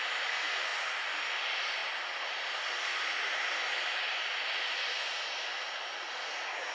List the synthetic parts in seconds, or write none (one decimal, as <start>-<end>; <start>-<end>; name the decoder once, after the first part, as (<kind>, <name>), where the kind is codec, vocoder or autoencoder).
none